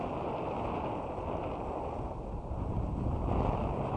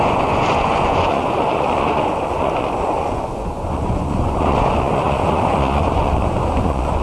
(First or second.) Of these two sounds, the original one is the first